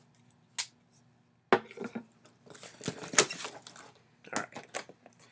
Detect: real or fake real